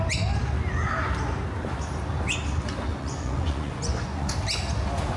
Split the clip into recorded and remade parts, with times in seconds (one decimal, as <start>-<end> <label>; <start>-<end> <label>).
0.0-2.9 recorded; 2.9-4.3 remade; 4.3-5.2 recorded